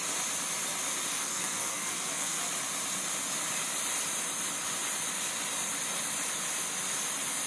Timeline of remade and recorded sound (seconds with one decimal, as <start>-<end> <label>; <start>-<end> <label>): 0.0-1.1 recorded; 1.1-2.4 remade; 2.4-7.5 recorded